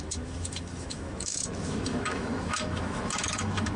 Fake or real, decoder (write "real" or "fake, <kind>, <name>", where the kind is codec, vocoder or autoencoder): fake, autoencoder, DAC-VAE